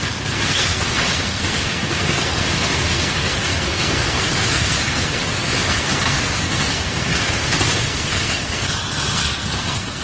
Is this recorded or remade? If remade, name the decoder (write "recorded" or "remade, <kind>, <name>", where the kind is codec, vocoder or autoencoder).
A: remade, codec, SNAC